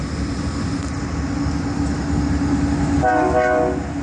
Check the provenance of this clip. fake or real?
real